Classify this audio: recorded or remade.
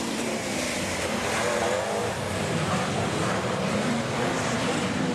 remade